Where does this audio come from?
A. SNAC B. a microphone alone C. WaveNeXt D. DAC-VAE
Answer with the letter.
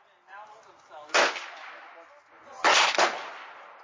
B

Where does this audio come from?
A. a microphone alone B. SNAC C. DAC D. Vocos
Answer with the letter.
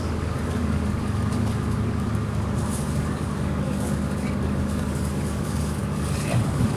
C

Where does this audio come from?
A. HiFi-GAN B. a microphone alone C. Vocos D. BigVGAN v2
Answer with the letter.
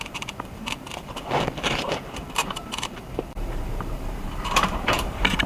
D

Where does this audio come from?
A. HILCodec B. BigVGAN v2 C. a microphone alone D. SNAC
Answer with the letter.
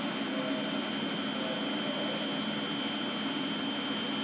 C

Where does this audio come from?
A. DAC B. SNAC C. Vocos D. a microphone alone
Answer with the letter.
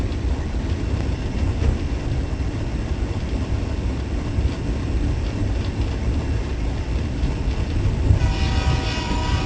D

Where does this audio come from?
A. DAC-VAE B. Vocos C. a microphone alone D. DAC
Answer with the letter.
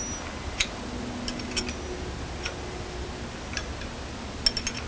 C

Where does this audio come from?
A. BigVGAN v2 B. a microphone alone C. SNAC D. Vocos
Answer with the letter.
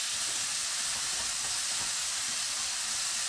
B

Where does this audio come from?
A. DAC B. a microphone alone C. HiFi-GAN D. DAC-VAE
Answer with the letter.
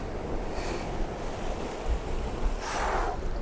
B